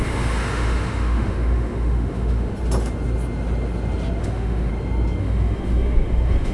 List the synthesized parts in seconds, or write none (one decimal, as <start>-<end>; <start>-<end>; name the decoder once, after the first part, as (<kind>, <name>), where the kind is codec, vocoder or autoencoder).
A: 0.0-2.5 (autoencoder, DAC-VAE); 4.2-4.7; 5.2-6.5